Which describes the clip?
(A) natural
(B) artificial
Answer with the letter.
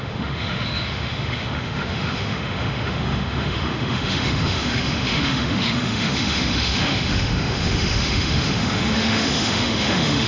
B